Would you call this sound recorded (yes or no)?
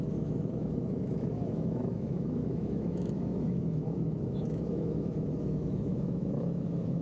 no